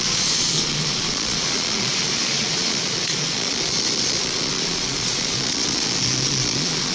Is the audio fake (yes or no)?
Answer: yes